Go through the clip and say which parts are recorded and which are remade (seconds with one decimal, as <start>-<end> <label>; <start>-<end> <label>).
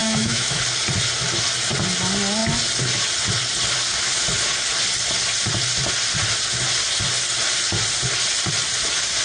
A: 0.0-0.6 remade; 0.6-9.2 recorded